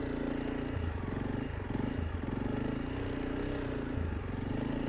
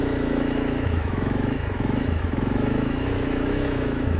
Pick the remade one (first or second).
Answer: second